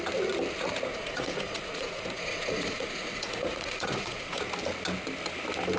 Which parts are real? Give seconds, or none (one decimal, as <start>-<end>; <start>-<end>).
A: 0.0-0.9; 4.4-5.8